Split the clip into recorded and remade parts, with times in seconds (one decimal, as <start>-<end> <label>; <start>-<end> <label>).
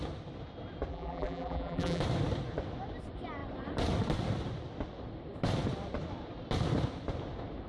0.0-0.9 recorded; 0.9-2.0 remade; 2.0-7.7 recorded